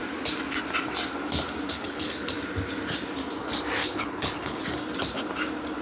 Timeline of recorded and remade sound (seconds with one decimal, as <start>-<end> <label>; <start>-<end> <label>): 0.0-1.7 recorded; 1.7-2.3 remade; 2.3-3.8 recorded; 3.8-4.6 remade; 4.6-5.8 recorded